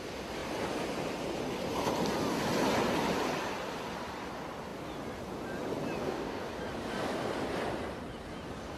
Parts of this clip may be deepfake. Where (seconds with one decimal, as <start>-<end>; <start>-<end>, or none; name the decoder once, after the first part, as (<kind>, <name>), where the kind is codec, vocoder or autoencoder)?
6.0-6.5 (codec, DAC)

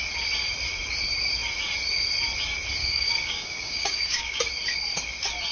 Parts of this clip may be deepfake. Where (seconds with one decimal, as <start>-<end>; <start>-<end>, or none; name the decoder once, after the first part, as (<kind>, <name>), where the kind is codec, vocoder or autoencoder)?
2.8-4.4 (codec, DAC)